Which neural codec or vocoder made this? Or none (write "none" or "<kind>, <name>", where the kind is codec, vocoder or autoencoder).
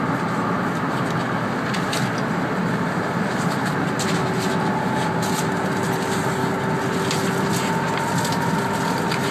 none